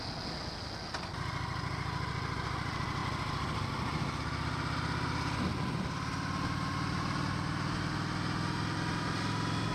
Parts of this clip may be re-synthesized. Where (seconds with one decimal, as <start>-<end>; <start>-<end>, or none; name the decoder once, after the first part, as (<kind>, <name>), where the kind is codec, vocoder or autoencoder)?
none